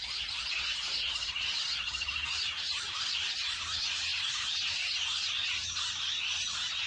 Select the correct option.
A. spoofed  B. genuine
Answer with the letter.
B